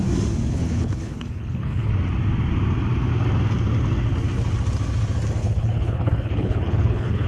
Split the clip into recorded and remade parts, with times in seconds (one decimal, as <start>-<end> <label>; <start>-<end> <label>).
0.0-0.5 recorded; 0.5-1.9 remade; 1.9-5.4 recorded; 5.4-7.3 remade